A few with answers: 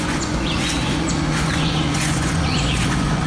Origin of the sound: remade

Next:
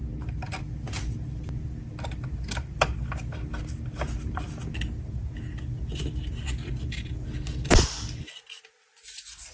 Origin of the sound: recorded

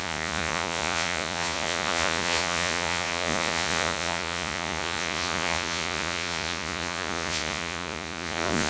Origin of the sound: remade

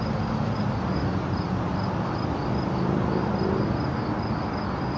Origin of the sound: recorded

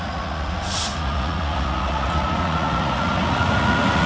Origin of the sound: remade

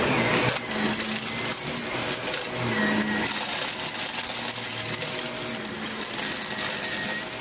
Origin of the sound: recorded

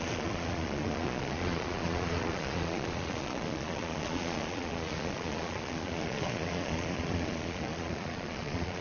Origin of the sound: remade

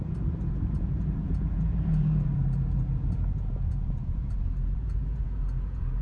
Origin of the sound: remade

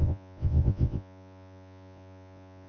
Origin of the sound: remade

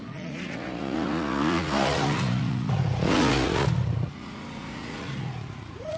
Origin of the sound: remade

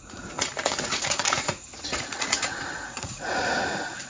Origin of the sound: remade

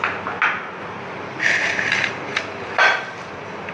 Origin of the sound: recorded